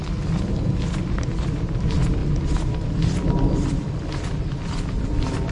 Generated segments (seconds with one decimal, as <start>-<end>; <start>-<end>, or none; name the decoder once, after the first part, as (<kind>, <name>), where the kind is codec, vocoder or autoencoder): none